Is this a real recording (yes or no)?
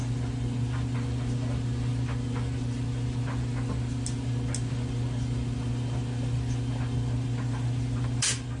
yes